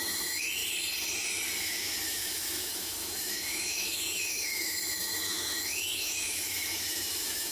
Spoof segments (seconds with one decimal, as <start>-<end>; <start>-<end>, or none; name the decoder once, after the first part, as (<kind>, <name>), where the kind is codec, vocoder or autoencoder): 0.0-0.6 (autoencoder, DAC-VAE); 1.6-7.5